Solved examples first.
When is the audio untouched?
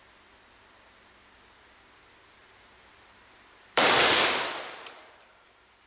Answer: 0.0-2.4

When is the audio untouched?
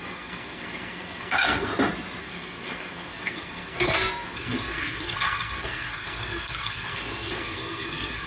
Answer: 1.7-2.2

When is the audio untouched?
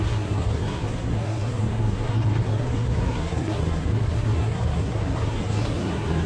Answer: none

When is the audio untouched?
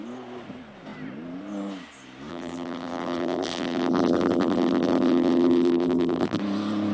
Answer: 0.0-2.3; 6.4-6.9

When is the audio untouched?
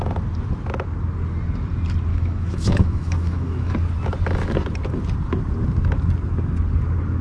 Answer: 0.0-2.1; 3.7-7.2